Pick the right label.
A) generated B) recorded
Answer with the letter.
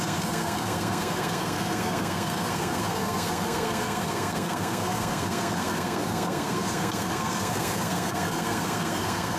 A